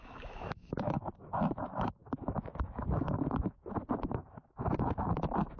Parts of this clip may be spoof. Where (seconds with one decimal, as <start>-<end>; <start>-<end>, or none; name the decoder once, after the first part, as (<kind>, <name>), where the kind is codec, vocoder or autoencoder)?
0.0-5.6 (autoencoder, DAC-VAE)